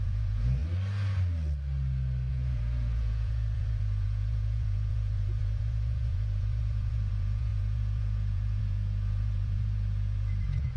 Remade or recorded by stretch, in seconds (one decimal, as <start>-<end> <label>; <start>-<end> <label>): 0.0-0.6 remade; 0.6-2.3 recorded; 2.3-10.8 remade